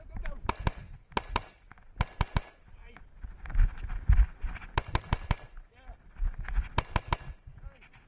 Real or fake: real